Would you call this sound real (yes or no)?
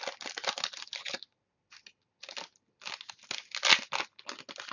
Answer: yes